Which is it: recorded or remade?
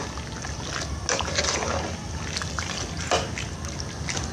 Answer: recorded